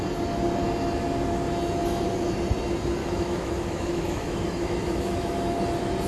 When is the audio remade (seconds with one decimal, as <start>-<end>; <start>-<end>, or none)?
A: 3.0-5.6